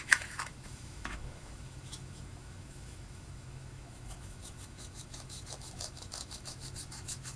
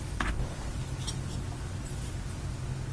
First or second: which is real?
second